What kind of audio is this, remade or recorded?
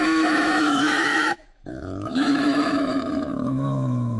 remade